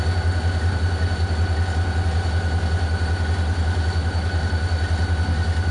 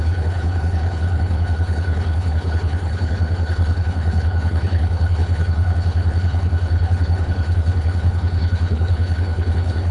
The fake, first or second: second